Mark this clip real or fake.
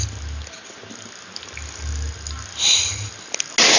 real